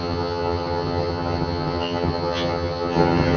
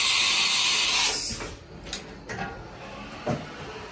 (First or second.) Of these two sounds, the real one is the second